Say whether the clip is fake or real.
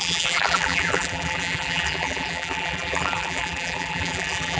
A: fake